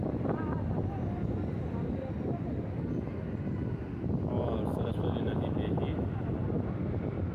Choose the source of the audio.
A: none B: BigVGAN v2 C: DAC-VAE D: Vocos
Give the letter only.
A